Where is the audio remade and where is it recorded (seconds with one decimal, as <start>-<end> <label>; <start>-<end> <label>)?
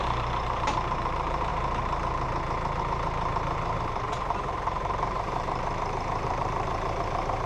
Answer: 0.0-1.5 remade; 1.5-2.8 recorded; 2.8-7.5 remade